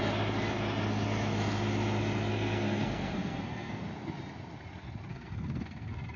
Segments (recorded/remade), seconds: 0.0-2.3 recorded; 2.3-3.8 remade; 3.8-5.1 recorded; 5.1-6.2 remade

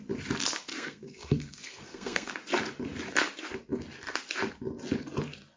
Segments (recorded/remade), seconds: 0.0-0.7 recorded; 0.7-2.3 remade; 2.3-5.6 recorded

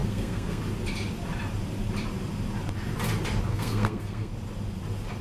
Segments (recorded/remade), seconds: 0.0-0.6 remade; 0.6-3.5 recorded; 3.5-4.3 remade; 4.3-5.2 recorded

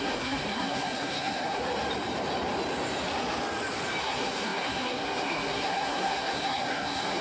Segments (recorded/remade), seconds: 0.0-1.6 remade; 1.6-4.0 recorded; 4.0-7.2 remade